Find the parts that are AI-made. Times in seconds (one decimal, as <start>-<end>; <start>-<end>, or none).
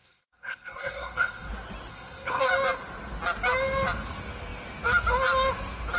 0.0-1.5; 1.9-2.5